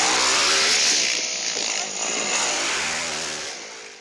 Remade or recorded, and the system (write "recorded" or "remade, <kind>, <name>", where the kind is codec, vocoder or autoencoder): recorded